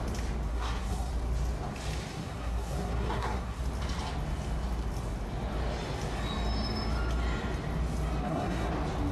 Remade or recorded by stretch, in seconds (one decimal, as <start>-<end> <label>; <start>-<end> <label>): 0.0-0.5 recorded; 0.5-1.1 remade; 1.1-2.1 recorded; 2.1-3.6 remade; 3.6-8.2 recorded; 8.2-8.7 remade; 8.7-9.1 recorded